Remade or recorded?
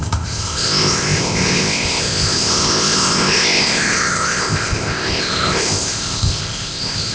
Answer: remade